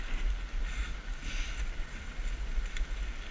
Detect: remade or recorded recorded